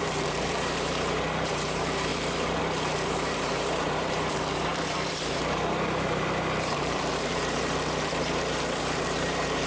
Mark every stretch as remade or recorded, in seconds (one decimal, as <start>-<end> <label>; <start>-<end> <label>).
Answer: 0.0-9.7 remade